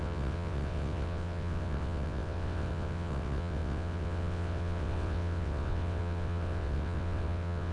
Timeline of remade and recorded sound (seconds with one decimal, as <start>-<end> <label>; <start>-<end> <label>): 0.0-7.7 remade